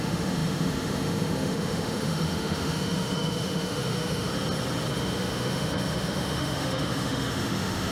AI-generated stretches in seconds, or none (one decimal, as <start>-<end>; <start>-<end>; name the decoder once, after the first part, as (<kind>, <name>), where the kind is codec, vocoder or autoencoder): 0.0-4.3 (autoencoder, DAC-VAE); 4.9-7.9